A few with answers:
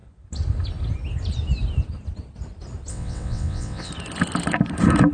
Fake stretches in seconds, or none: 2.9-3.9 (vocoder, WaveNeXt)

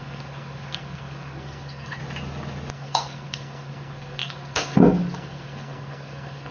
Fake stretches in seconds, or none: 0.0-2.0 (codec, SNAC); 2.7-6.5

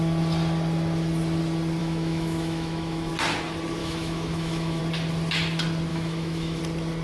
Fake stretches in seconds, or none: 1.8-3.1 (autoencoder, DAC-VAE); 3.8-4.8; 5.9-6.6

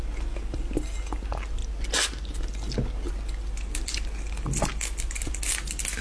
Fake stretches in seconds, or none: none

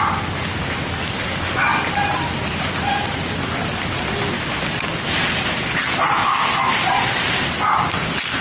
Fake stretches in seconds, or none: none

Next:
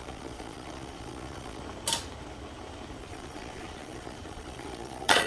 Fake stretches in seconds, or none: 0.0-1.6 (vocoder, Vocos); 3.0-5.3